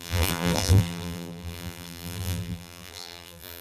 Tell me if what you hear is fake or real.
fake